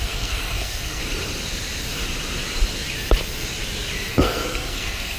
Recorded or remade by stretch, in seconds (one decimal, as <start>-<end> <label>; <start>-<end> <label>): 0.0-1.0 remade; 1.0-4.1 recorded; 4.1-5.2 remade